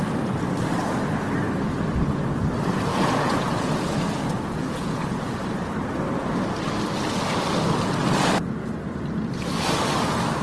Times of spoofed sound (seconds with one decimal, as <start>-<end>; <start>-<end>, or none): 2.9-5.4